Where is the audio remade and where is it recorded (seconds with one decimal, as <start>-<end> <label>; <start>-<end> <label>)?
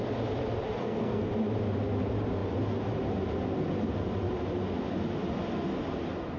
0.0-0.8 recorded; 0.8-1.3 remade; 1.3-6.4 recorded